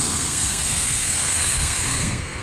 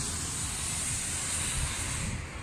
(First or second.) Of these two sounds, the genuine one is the second